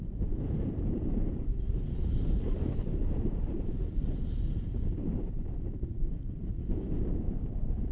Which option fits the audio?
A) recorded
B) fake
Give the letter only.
B